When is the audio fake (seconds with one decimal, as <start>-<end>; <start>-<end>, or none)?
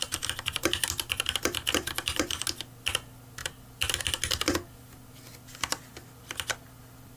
none